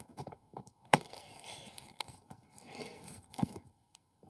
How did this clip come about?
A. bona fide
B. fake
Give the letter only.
B